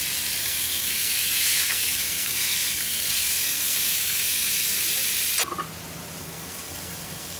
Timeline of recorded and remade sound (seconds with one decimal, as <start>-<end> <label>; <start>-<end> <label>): 0.0-0.4 recorded; 0.4-4.8 remade; 4.8-6.2 recorded; 6.2-7.4 remade